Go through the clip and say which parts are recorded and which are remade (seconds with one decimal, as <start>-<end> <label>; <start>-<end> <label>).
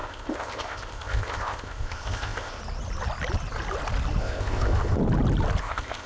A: 0.0-2.6 remade; 2.6-4.2 recorded; 4.2-5.0 remade; 5.0-5.6 recorded; 5.6-6.1 remade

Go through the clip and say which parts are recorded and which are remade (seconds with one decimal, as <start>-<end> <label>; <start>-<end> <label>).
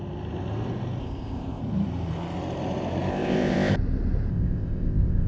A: 0.0-1.0 recorded; 1.0-1.6 remade; 1.6-3.1 recorded; 3.1-3.7 remade; 3.7-4.3 recorded; 4.3-5.3 remade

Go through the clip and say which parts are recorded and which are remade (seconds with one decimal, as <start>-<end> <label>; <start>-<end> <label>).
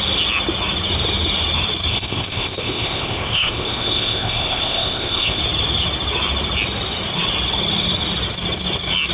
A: 0.0-1.9 recorded; 1.9-5.4 remade; 5.4-9.1 recorded